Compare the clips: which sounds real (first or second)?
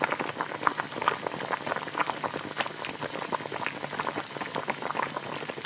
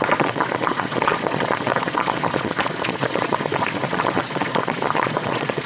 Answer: first